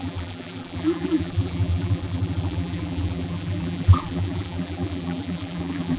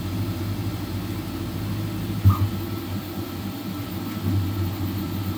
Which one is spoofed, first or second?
first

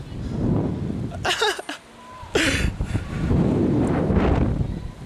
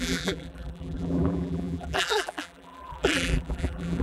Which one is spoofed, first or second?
second